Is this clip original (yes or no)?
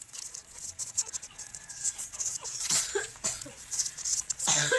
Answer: no